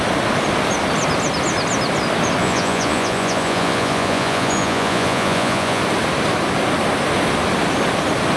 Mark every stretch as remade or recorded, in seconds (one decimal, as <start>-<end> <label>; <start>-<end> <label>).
0.0-2.4 recorded; 2.4-5.8 remade; 5.8-8.4 recorded